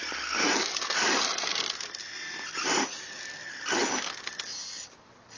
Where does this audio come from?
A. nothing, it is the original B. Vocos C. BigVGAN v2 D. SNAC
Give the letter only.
A